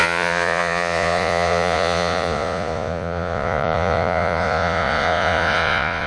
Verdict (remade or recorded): remade